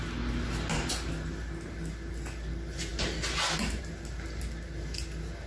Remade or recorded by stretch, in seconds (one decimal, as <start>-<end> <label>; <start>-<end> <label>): 0.0-5.5 recorded